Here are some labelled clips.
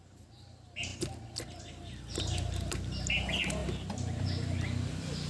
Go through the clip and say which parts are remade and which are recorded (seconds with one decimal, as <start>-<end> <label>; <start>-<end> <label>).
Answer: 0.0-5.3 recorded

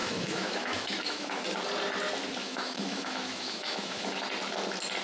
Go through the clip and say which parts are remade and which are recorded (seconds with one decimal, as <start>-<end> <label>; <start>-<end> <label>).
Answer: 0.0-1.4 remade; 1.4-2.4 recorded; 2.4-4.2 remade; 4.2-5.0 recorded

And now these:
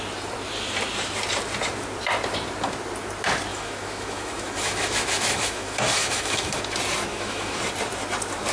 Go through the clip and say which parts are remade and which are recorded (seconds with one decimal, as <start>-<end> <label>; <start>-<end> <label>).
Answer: 0.0-3.5 recorded; 3.5-6.6 remade; 6.6-7.1 recorded; 7.1-7.6 remade; 7.6-8.5 recorded